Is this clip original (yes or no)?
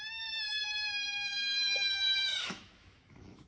no